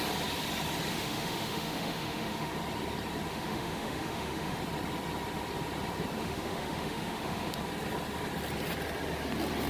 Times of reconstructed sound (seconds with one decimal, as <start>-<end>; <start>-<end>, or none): 0.9-2.5; 3.3-4.6; 6.2-7.6